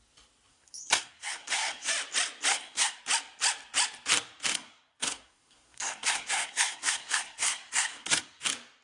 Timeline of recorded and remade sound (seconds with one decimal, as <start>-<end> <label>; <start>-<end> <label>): 0.0-0.5 recorded; 0.5-1.9 remade; 1.9-2.5 recorded; 2.5-3.0 remade; 3.0-4.5 recorded; 4.5-8.4 remade; 8.4-8.8 recorded